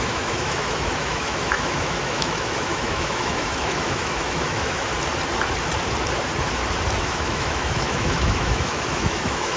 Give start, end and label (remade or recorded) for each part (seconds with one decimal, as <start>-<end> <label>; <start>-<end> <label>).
0.0-4.9 remade; 4.9-7.0 recorded; 7.0-9.6 remade